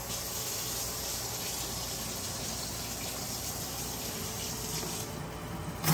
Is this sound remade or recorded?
recorded